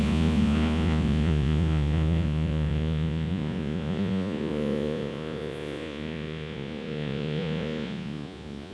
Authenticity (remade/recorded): remade